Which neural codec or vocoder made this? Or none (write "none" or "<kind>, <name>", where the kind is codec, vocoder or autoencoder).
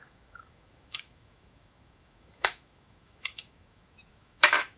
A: autoencoder, DAC-VAE